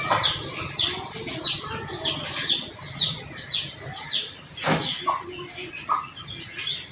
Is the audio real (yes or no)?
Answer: yes